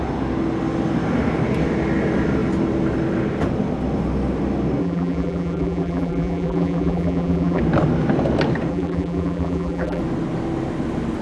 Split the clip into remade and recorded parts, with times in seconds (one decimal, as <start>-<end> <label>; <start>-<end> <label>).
0.0-4.8 recorded; 4.8-7.6 remade; 7.6-8.7 recorded; 8.7-10.0 remade; 10.0-11.2 recorded